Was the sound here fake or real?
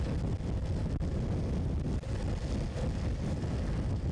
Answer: real